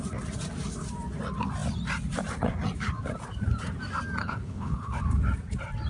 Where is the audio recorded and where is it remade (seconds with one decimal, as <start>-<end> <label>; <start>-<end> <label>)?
0.0-4.2 recorded; 4.2-5.0 remade; 5.0-5.9 recorded